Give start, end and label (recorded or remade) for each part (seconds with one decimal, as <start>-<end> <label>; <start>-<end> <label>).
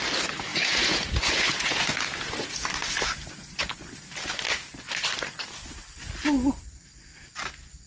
0.0-0.5 recorded; 0.5-2.5 remade; 2.5-7.9 recorded